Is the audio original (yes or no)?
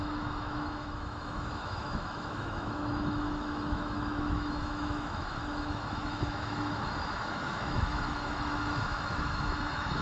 no